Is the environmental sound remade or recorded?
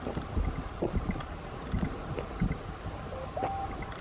recorded